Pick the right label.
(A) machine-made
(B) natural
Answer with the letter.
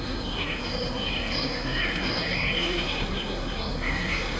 A